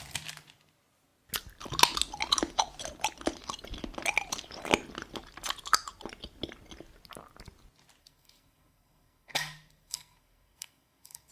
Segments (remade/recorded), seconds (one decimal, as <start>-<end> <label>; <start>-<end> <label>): 0.0-8.0 recorded; 8.0-11.3 remade